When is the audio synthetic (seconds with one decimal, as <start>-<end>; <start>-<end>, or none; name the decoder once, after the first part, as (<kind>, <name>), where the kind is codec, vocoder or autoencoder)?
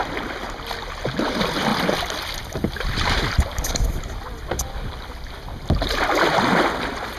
none